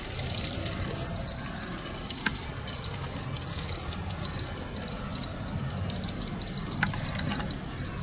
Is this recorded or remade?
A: recorded